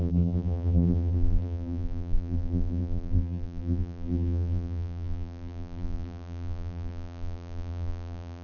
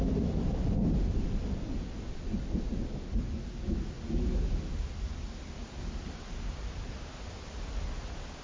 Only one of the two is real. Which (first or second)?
second